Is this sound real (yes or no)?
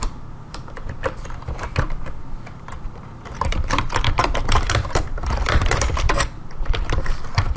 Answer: no